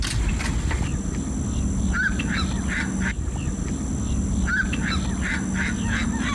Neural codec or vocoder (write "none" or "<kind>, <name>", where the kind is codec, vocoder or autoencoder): none